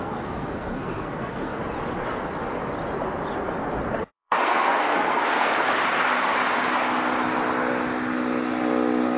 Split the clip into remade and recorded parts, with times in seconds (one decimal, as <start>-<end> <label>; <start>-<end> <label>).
0.0-1.6 remade; 1.6-3.9 recorded; 3.9-5.5 remade; 5.5-9.2 recorded